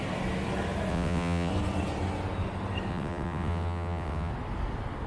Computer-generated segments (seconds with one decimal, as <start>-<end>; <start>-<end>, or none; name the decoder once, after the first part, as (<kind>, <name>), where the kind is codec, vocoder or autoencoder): 0.9-1.5 (vocoder, WaveNeXt); 2.9-4.3